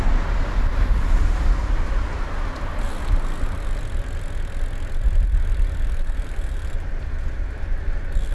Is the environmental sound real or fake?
real